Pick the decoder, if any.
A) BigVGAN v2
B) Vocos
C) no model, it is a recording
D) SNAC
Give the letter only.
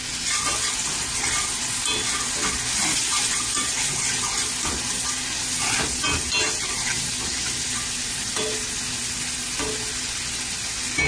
C